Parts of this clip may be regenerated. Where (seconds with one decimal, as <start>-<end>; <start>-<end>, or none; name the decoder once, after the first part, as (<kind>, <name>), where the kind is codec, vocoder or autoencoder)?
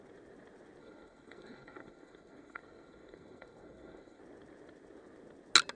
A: 0.8-4.2 (codec, SNAC)